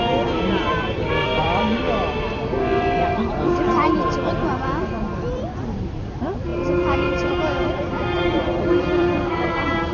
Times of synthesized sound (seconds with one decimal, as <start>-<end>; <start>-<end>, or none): 0.0-9.9

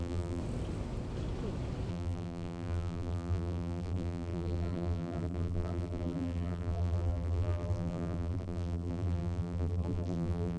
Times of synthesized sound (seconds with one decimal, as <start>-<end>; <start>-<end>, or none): 0.0-0.4; 1.9-10.6

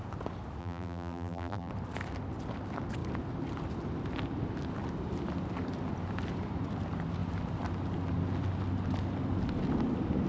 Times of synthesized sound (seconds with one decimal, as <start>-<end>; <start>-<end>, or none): 0.6-1.7

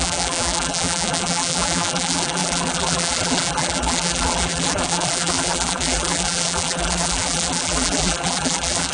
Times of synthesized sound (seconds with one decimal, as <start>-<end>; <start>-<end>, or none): 0.0-8.9

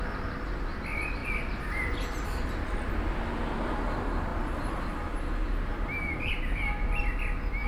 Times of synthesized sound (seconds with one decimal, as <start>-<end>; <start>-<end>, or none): 1.2-2.9; 4.3-4.9; 5.7-7.0